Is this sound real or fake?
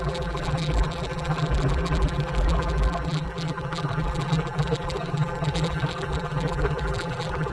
fake